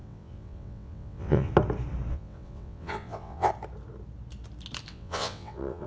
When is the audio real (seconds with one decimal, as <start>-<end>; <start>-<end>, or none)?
1.5-2.1; 3.5-4.9